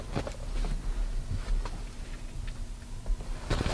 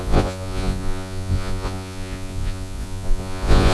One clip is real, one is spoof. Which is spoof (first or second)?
second